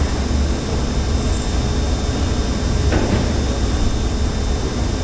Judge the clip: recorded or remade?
recorded